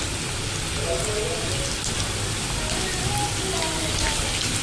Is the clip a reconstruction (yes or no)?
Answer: no